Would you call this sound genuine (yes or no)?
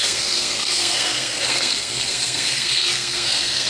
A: no